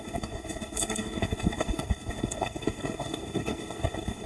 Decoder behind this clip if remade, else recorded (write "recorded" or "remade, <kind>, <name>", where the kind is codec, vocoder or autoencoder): remade, codec, SNAC